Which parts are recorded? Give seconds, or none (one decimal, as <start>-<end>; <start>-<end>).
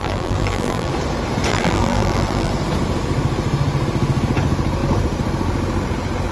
0.9-1.5; 2.5-6.3